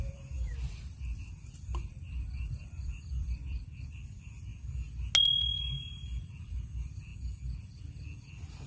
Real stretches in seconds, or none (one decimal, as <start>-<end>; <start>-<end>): 4.5-6.5; 7.1-8.7